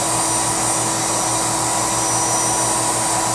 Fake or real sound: real